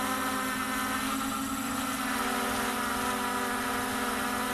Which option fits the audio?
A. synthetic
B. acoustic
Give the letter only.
B